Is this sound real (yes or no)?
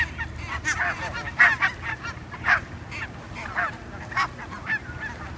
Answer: yes